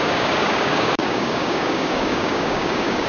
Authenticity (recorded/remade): remade